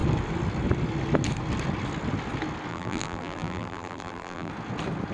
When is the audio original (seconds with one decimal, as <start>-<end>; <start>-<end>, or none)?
0.0-2.7; 4.5-5.1